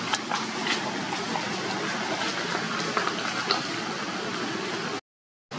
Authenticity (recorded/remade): recorded